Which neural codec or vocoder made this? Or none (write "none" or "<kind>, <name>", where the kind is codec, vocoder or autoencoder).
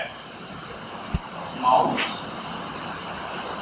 none